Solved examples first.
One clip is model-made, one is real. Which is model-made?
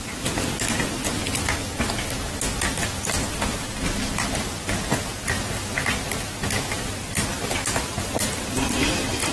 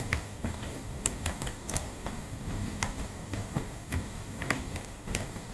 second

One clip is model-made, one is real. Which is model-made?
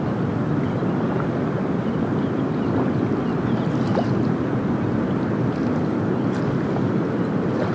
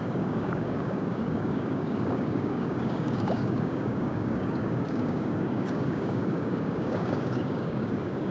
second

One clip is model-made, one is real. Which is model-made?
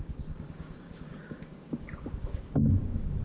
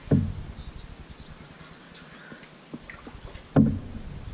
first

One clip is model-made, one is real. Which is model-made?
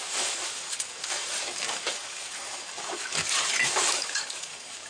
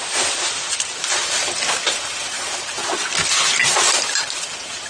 first